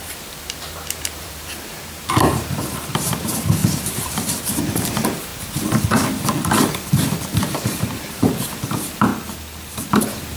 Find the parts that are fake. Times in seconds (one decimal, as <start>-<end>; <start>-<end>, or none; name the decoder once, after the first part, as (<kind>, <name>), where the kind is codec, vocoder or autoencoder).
0.0-5.3 (vocoder, BigVGAN v2); 7.4-9.1; 9.9-10.4